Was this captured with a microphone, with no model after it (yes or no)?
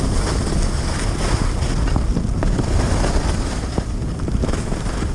yes